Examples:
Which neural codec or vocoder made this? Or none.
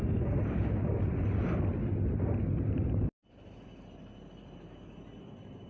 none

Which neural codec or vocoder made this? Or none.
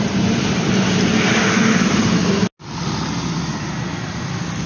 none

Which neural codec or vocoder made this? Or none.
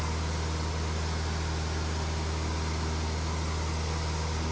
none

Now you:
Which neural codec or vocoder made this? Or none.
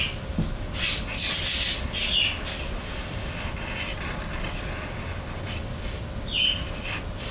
none